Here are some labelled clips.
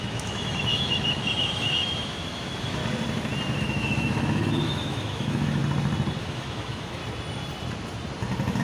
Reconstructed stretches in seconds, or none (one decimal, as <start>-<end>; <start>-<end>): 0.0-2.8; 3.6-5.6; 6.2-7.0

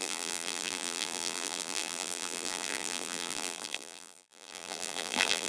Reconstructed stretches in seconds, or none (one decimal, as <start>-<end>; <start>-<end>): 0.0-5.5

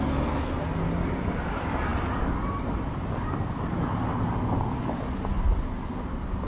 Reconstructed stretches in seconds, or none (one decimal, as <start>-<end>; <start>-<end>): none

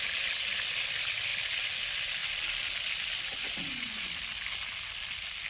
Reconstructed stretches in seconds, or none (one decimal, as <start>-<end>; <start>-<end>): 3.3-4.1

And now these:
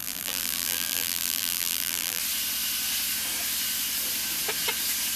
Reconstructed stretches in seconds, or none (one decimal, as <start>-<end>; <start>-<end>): 0.0-2.2

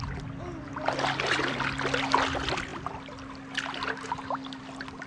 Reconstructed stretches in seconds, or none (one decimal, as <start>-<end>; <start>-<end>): none

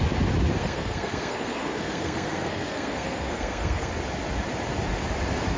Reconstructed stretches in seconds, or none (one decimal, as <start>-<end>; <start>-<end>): 0.5-3.9

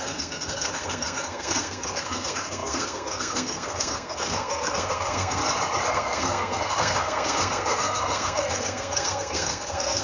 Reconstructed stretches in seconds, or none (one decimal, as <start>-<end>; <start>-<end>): 0.0-5.4; 5.9-10.0